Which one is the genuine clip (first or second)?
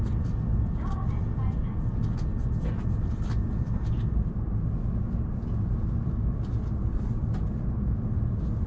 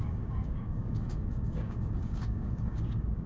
first